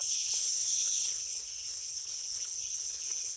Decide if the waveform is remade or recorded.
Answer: remade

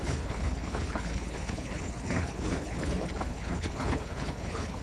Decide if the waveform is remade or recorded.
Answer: remade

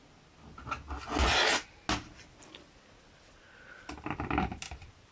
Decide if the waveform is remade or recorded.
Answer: recorded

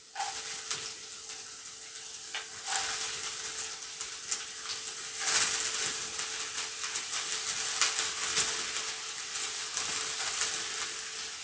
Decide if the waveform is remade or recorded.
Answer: recorded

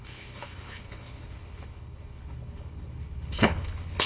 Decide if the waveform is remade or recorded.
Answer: remade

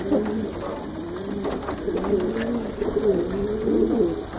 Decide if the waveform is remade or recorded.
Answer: recorded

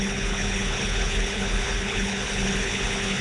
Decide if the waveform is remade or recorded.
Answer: remade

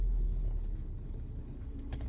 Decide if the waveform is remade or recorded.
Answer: remade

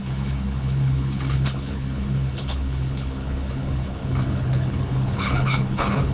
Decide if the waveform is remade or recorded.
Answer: remade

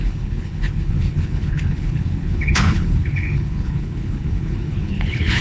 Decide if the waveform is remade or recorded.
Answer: remade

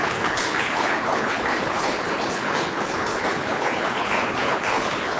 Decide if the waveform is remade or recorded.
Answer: remade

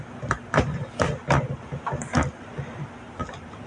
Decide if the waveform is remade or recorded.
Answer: recorded